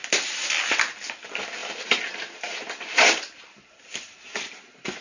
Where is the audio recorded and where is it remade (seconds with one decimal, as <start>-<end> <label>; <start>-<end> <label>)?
0.0-1.6 recorded; 1.6-4.6 remade; 4.6-5.0 recorded